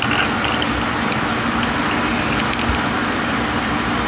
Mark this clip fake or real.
real